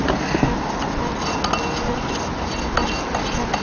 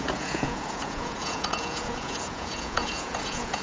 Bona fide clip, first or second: first